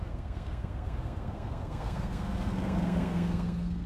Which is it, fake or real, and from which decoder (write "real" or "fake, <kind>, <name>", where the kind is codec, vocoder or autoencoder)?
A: fake, codec, SNAC